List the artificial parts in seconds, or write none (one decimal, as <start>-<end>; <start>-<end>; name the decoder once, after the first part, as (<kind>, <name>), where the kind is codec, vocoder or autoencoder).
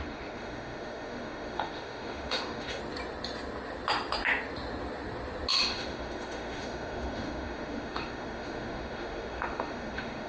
0.0-2.8 (autoencoder, DAC-VAE); 5.5-10.3